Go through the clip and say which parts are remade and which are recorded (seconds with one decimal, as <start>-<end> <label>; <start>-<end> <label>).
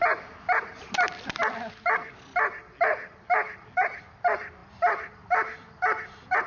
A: 0.0-6.5 recorded